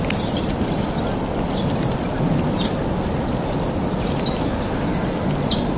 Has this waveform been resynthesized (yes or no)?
no